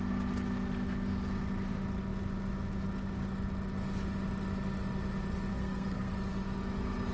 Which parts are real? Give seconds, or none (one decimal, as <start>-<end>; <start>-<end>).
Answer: 0.0-5.5; 6.1-7.1